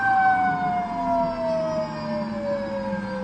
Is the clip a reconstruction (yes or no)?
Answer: no